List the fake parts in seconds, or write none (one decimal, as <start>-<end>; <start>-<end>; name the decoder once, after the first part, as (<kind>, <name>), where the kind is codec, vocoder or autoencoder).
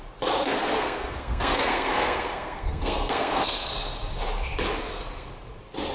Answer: 0.7-3.7 (codec, SNAC); 4.8-5.3